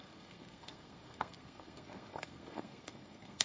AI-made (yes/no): yes